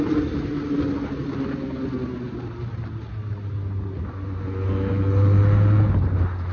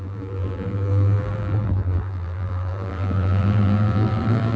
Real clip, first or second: first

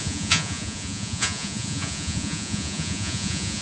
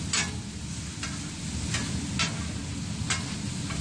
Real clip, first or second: second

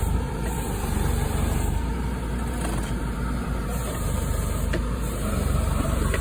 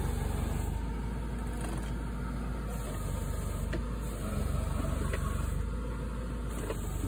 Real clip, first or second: second